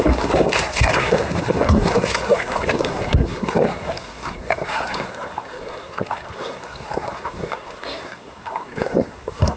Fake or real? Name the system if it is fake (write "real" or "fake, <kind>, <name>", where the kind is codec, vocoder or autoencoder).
fake, codec, SNAC